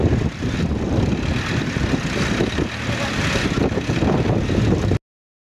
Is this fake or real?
real